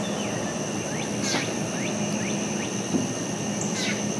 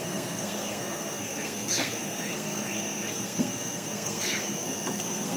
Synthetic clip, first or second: second